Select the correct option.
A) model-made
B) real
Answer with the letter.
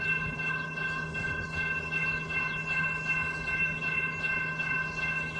A